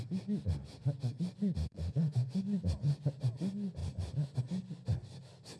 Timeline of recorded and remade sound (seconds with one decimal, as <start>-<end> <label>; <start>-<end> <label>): 0.0-1.6 recorded; 1.6-2.4 remade; 2.4-5.6 recorded